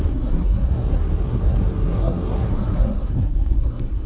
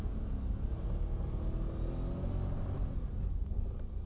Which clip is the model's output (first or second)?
first